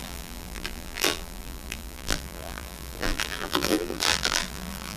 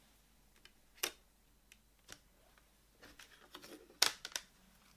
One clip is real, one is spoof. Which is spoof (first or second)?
first